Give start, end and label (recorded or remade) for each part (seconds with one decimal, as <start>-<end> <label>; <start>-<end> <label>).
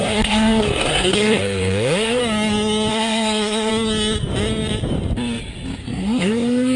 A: 0.0-2.2 remade; 2.2-2.9 recorded; 2.9-3.7 remade; 3.7-5.8 recorded; 5.8-6.8 remade